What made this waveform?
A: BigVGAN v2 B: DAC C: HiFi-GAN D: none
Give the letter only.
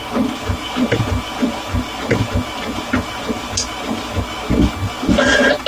D